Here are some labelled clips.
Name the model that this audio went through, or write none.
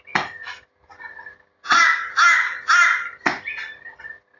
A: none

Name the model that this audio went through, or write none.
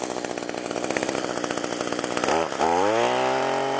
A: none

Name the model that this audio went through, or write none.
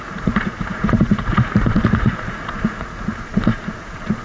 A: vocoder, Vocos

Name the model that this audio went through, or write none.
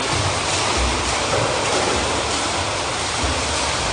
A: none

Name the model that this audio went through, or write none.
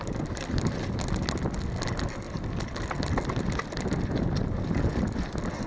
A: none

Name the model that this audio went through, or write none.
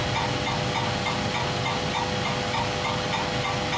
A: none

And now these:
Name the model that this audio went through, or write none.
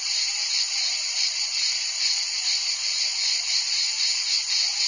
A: none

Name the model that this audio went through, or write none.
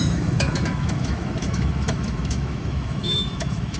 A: autoencoder, DAC-VAE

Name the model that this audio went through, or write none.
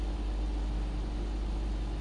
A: none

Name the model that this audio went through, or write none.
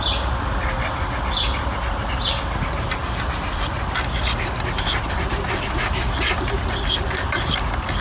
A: none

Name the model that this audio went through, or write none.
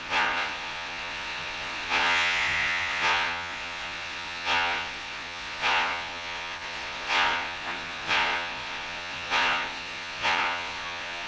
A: vocoder, Vocos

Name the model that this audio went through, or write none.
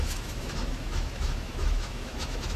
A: autoencoder, DAC-VAE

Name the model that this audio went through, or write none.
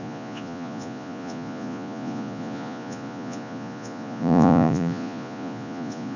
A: vocoder, Vocos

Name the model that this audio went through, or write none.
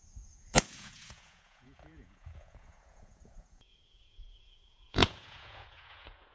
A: vocoder, Vocos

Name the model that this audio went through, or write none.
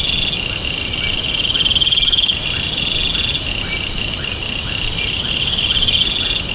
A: none